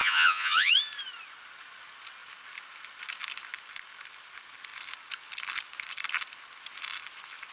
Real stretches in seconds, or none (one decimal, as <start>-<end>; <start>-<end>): 0.7-7.5